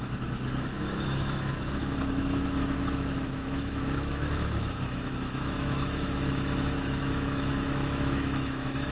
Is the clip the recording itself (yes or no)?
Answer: no